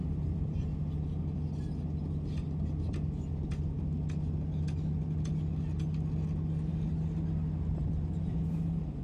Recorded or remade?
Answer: recorded